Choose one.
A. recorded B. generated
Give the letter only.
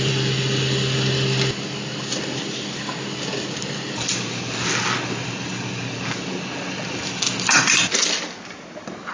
A